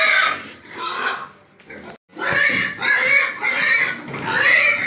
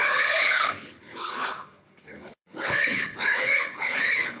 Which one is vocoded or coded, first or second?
second